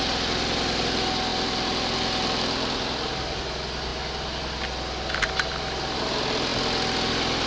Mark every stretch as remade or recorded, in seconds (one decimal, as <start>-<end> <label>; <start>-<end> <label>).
0.0-7.5 recorded